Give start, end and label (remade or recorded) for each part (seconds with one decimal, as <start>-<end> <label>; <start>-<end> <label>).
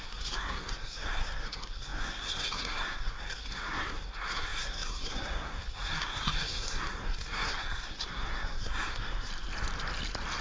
0.0-9.3 remade; 9.3-10.4 recorded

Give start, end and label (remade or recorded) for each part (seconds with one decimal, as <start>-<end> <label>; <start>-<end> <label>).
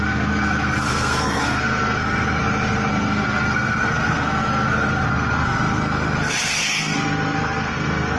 0.0-2.4 remade; 2.4-2.9 recorded; 2.9-8.2 remade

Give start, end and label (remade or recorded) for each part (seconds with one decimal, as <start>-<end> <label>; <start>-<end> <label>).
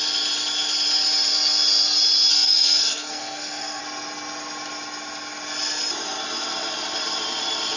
0.0-2.3 recorded; 2.3-3.8 remade; 3.8-7.8 recorded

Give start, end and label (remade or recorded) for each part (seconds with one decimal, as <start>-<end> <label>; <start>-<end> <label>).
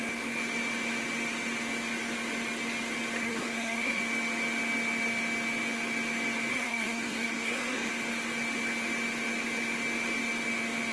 0.0-3.2 recorded; 3.2-4.0 remade; 4.0-6.5 recorded; 6.5-7.9 remade; 7.9-10.9 recorded